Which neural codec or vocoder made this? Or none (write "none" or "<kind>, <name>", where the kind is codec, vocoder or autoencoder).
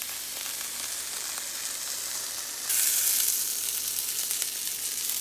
none